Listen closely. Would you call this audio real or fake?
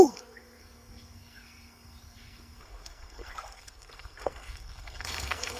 fake